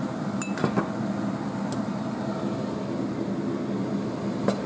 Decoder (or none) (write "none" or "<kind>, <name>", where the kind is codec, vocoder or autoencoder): none